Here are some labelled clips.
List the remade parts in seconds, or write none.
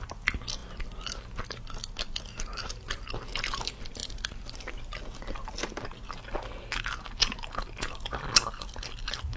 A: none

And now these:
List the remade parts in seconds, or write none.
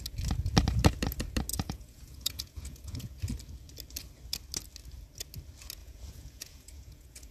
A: 1.5-3.2; 5.8-7.3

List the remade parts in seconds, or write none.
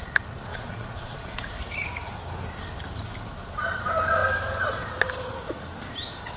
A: 0.5-1.4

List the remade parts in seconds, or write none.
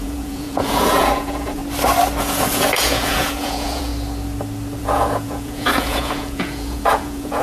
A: 0.0-1.6; 2.2-3.9; 4.8-7.4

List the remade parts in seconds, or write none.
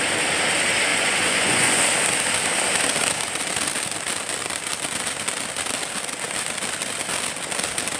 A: 0.9-1.8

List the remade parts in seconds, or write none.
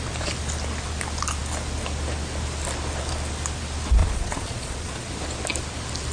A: 4.0-5.1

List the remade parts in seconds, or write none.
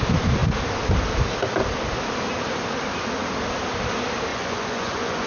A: 4.3-5.3